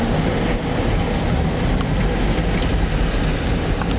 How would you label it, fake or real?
real